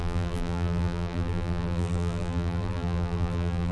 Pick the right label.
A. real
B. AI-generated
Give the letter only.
B